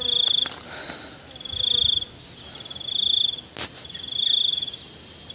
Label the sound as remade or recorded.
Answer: recorded